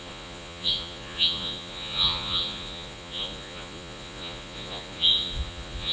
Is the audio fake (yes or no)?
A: yes